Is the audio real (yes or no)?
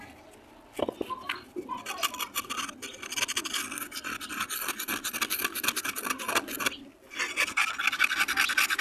yes